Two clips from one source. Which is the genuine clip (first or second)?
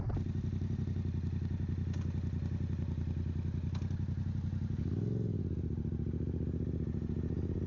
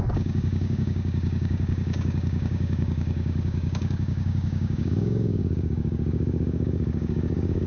first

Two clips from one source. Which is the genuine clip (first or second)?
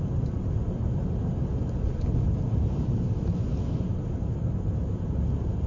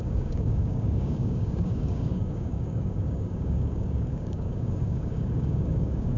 first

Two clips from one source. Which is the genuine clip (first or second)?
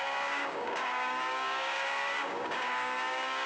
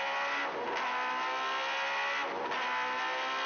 second